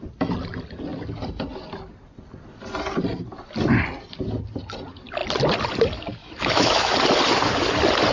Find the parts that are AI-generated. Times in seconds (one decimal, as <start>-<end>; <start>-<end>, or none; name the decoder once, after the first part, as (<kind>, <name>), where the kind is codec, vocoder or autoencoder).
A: 6.2-6.9 (autoencoder, DAC-VAE)